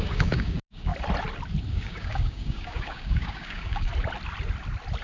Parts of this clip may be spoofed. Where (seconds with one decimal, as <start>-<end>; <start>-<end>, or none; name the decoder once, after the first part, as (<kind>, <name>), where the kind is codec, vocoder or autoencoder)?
0.0-0.9 (codec, DAC); 1.7-3.9